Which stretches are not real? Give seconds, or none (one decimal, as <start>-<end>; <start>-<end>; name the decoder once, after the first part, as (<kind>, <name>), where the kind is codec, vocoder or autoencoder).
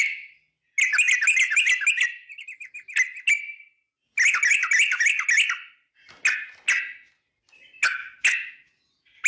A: none